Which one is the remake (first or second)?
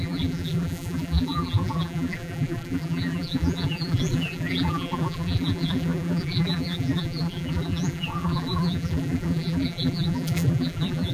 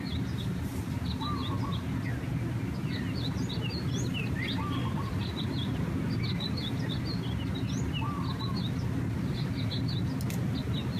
first